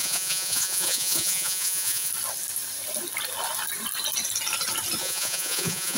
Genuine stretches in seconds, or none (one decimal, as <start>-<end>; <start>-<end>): 2.1-5.0